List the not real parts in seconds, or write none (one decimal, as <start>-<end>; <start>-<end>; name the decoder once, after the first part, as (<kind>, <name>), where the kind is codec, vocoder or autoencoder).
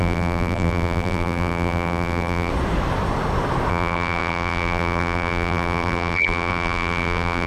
0.0-2.5 (vocoder, BigVGAN v2); 3.7-7.5